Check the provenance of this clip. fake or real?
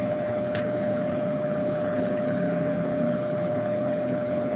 fake